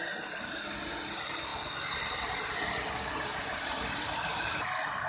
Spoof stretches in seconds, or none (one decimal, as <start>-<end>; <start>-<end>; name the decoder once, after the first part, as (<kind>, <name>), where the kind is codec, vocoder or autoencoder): none